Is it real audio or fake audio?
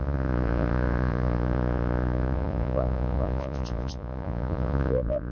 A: fake